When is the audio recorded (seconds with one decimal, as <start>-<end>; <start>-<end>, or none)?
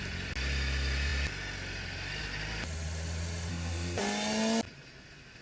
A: 0.0-3.5; 4.0-5.4